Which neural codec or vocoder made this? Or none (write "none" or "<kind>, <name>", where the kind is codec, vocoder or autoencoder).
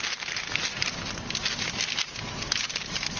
none